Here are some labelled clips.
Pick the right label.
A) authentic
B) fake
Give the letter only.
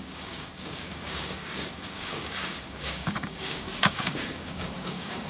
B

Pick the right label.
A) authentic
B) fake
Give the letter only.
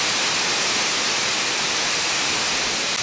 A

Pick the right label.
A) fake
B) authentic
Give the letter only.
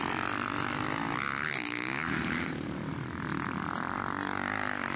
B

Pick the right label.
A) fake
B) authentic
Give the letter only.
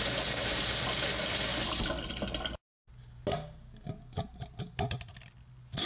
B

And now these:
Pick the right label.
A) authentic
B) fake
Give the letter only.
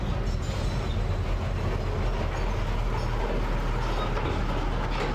A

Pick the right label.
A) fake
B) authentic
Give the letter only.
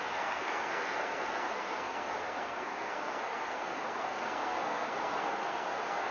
A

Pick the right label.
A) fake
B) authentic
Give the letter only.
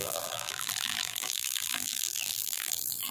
A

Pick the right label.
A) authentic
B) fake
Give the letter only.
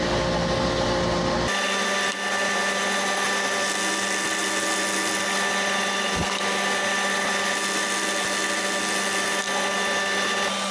A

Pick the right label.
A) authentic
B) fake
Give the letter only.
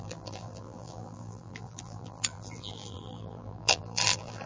B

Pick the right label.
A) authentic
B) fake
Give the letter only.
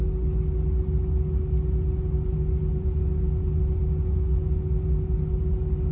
A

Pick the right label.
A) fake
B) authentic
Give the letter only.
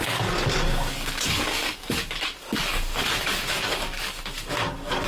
A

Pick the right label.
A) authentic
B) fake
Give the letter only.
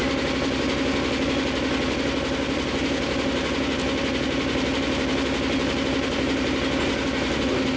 A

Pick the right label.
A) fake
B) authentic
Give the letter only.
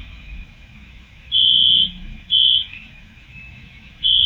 A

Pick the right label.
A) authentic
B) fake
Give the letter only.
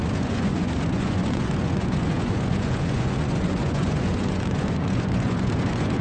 B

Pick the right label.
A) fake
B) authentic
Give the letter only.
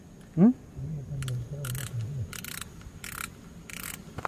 B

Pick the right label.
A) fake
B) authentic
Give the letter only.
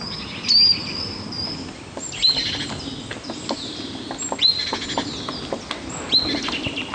B